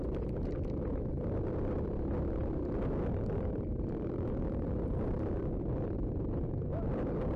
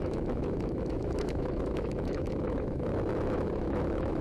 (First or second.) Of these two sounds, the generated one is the second